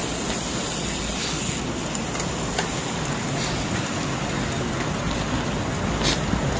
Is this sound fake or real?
real